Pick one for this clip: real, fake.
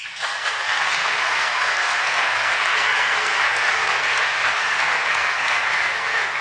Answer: fake